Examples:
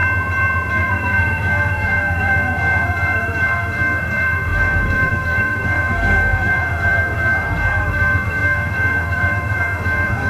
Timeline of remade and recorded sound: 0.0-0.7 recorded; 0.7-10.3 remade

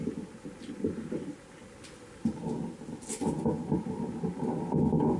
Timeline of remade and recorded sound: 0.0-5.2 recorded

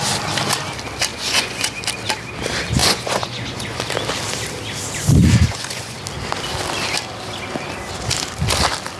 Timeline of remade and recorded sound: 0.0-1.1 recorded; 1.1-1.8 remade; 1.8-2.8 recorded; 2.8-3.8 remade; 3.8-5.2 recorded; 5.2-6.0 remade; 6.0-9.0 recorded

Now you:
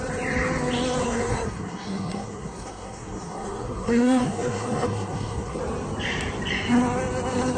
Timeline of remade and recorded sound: 0.0-1.0 recorded; 1.0-5.6 remade; 5.6-7.6 recorded

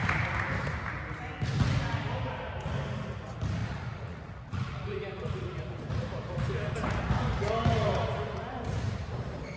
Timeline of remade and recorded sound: 0.0-3.6 recorded; 3.6-4.9 remade; 4.9-9.6 recorded

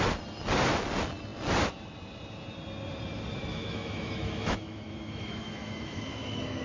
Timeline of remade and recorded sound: 0.0-3.5 recorded; 3.5-6.6 remade

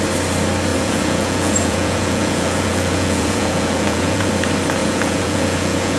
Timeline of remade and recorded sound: 0.0-0.7 recorded; 0.7-4.3 remade; 4.3-4.8 recorded; 4.8-6.0 remade